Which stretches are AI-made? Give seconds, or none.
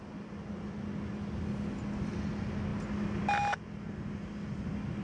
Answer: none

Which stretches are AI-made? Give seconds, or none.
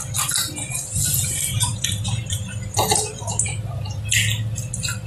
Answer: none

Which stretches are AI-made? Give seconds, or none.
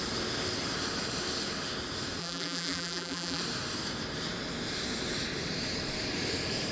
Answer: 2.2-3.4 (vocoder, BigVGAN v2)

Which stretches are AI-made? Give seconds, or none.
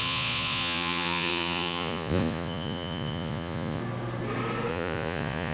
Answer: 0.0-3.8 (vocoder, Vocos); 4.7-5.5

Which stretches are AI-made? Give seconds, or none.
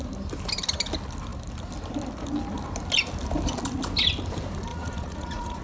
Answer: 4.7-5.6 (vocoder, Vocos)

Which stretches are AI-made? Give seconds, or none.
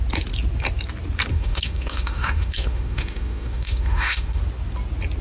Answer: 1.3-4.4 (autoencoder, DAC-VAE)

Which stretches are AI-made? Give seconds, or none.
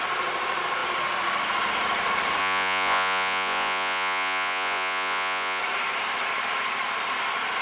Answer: 2.4-5.6 (vocoder, Vocos)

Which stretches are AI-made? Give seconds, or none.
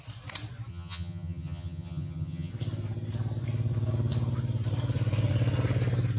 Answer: 0.7-2.5 (vocoder, HiFi-GAN)